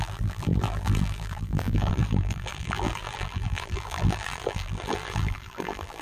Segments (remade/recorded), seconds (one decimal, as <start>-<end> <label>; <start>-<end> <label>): 0.0-6.0 remade